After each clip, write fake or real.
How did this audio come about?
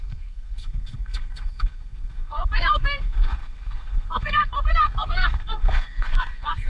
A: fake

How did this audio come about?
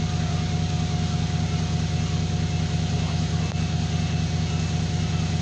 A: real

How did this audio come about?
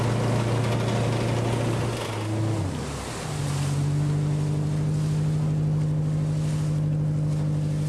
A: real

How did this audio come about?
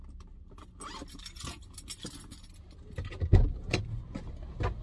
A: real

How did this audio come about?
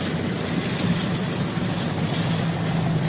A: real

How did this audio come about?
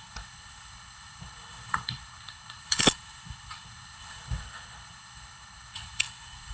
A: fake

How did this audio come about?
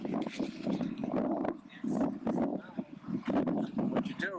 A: real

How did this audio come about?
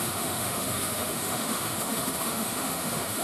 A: fake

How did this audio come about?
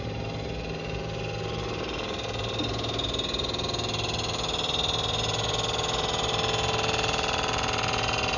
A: real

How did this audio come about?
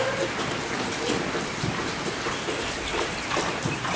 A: real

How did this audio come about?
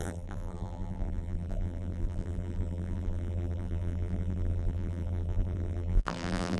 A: fake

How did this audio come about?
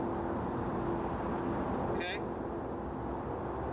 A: real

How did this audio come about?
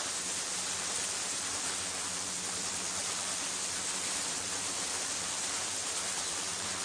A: fake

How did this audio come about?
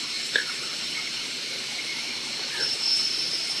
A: fake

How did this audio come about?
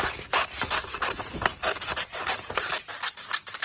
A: real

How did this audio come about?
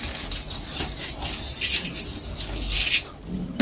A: real